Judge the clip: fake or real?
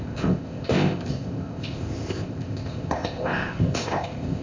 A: fake